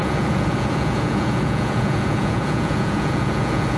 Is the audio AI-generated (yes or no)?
yes